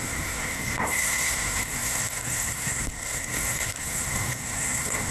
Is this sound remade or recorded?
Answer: remade